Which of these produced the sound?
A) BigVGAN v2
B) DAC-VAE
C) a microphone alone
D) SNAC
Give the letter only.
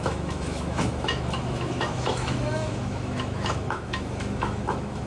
B